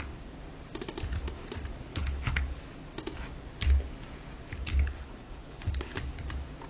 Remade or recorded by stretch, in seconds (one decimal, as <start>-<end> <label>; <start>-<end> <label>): 0.0-1.9 recorded; 1.9-2.6 remade; 2.6-4.7 recorded; 4.7-6.1 remade; 6.1-6.7 recorded